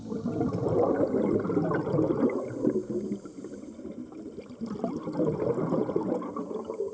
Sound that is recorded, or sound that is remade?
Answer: recorded